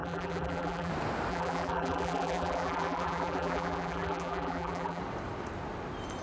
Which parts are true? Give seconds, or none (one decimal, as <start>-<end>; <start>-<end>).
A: 0.9-1.3; 5.0-6.2